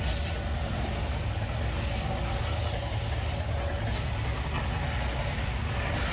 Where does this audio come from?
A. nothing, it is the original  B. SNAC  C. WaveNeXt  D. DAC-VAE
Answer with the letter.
A